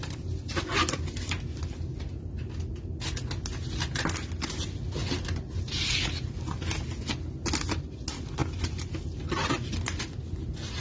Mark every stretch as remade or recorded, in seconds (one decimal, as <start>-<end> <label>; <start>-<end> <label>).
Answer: 0.0-5.0 recorded; 5.0-6.0 remade; 6.0-10.8 recorded